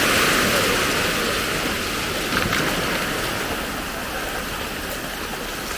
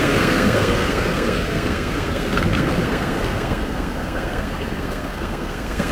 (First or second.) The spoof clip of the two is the second